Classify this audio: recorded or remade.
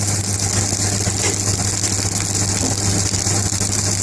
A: recorded